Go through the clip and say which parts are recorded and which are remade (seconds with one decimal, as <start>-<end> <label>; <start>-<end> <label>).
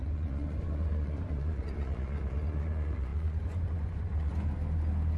0.0-4.3 remade; 4.3-5.2 recorded